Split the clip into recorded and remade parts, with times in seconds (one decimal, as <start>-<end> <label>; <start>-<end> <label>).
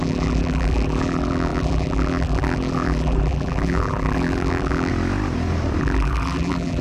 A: 0.0-4.9 remade; 4.9-5.8 recorded; 5.8-6.8 remade